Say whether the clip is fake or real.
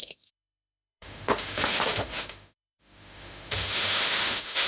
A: fake